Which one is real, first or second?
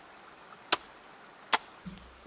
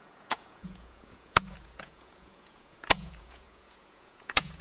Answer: first